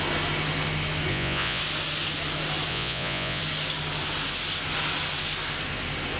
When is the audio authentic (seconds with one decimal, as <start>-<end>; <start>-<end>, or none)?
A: 0.0-1.1; 1.6-2.7; 3.4-6.2